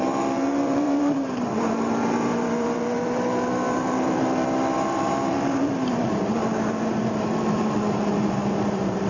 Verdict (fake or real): fake